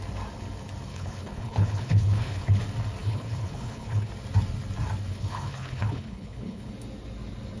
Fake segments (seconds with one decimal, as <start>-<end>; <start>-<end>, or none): 0.9-2.6; 3.0-4.1; 5.1-6.7